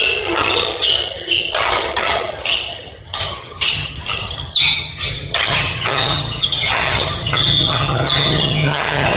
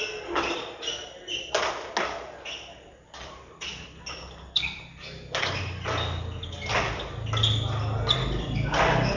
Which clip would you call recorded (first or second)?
second